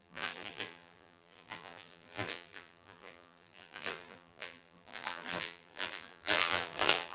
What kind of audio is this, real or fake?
fake